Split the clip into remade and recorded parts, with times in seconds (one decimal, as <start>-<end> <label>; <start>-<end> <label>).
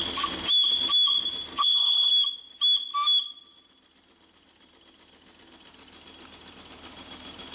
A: 0.0-1.5 recorded; 1.5-2.1 remade; 2.1-7.5 recorded